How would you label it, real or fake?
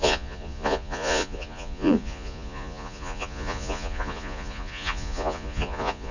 fake